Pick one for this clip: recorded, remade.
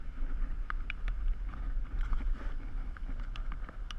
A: recorded